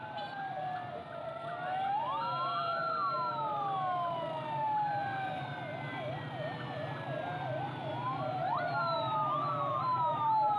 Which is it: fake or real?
real